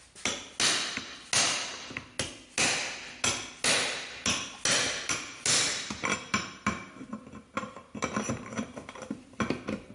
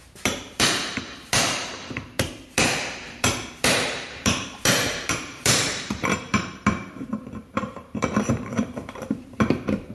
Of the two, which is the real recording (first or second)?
first